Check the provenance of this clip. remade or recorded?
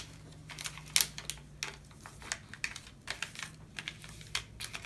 recorded